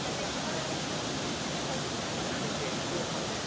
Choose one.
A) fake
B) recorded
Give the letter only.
B